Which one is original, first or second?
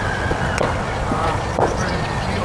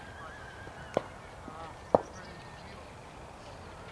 second